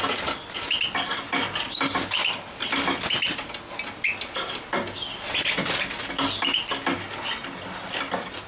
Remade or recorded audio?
recorded